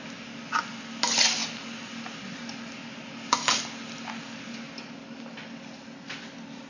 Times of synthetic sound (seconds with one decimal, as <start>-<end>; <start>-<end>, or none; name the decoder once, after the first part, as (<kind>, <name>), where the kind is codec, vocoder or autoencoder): none